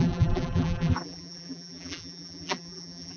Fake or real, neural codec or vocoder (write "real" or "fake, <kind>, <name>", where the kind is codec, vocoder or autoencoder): fake, vocoder, BigVGAN v2